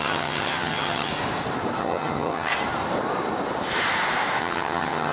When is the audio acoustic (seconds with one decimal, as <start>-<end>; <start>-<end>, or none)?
1.1-1.8; 2.5-4.4